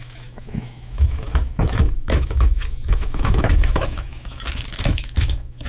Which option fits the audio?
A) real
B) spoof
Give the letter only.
B